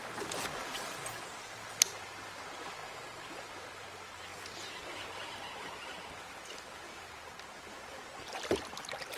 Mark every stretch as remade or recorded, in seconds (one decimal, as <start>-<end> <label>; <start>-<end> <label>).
0.0-2.8 recorded; 2.8-3.5 remade; 3.5-9.2 recorded